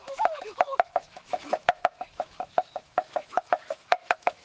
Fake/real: fake